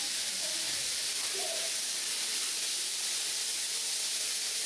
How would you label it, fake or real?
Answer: fake